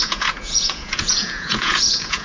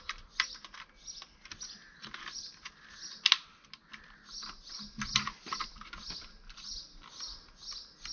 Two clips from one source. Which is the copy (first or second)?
first